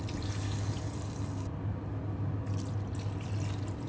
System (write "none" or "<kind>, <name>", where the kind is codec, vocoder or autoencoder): none